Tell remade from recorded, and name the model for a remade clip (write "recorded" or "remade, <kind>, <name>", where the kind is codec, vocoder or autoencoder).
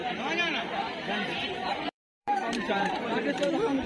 remade, vocoder, BigVGAN v2